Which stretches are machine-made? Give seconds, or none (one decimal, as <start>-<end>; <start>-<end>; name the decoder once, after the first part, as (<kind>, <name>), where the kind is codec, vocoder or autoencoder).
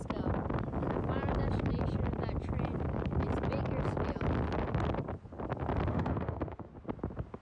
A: 5.9-6.7 (autoencoder, DAC-VAE)